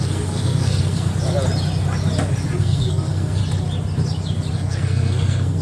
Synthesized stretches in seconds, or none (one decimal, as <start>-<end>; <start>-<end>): 0.0-1.1; 2.6-3.4; 4.5-5.6